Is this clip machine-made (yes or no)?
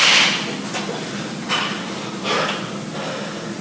no